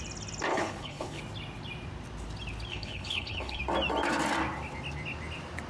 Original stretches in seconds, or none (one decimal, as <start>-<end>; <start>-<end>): 0.0-0.5; 1.2-2.7; 3.6-5.7